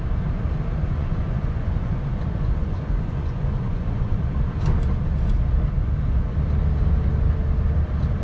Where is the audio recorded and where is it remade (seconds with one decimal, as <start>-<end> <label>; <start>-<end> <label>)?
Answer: 0.0-0.8 recorded; 0.8-4.2 remade; 4.2-8.2 recorded